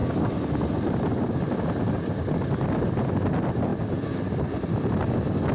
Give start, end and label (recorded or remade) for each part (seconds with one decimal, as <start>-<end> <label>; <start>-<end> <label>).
0.0-5.5 recorded